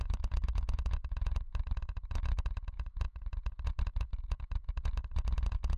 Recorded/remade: remade